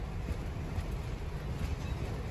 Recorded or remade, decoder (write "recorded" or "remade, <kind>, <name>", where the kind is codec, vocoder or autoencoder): recorded